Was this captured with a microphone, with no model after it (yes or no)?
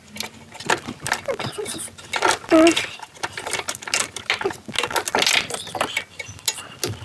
yes